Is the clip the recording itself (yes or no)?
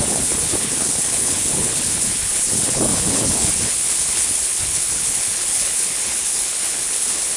no